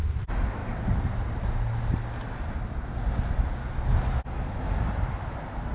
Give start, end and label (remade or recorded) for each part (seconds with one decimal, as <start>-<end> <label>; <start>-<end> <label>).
0.0-5.7 recorded

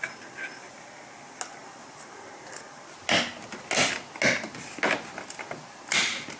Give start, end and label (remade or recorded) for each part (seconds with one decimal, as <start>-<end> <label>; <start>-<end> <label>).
0.0-6.4 recorded